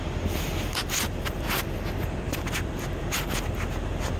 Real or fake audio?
real